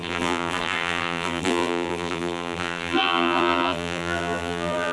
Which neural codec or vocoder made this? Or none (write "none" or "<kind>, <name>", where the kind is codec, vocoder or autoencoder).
vocoder, BigVGAN v2